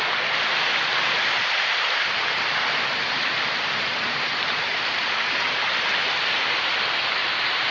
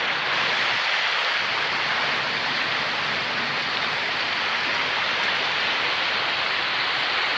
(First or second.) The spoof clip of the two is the first